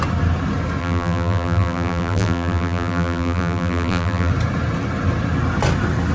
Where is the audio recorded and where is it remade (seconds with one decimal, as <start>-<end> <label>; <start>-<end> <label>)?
0.0-0.8 recorded; 0.8-4.3 remade; 4.3-6.1 recorded